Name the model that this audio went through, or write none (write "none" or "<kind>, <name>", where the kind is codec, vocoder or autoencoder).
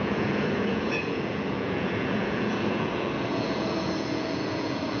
vocoder, Vocos